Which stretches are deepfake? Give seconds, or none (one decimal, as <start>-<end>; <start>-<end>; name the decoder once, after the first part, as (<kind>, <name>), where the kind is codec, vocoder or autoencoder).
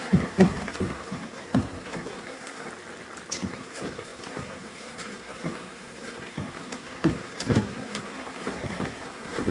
0.0-2.7 (codec, SNAC); 3.3-9.5